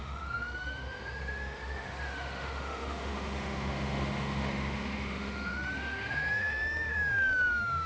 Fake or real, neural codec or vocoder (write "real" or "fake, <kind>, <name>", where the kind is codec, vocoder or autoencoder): fake, autoencoder, DAC-VAE